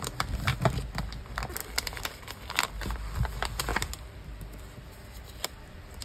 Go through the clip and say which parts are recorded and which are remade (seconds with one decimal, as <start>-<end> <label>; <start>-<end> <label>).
0.0-6.0 remade